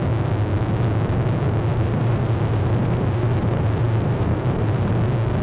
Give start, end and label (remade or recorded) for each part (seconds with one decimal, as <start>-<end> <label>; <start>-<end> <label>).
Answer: 0.0-1.7 recorded; 1.7-4.9 remade; 4.9-5.4 recorded